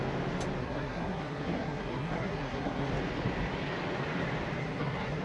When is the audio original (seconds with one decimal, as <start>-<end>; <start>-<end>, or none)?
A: 0.0-0.6; 2.9-4.6